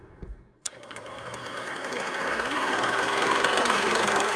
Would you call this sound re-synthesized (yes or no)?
yes